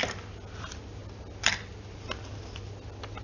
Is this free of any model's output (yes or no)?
yes